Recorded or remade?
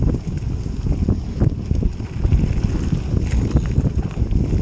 recorded